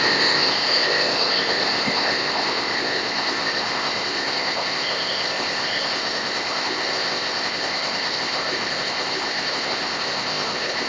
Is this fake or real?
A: fake